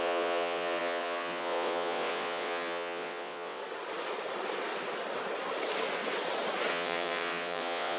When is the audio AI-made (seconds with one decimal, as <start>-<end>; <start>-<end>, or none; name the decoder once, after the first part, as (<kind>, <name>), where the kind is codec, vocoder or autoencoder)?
0.0-3.6 (vocoder, WaveNeXt); 6.7-8.0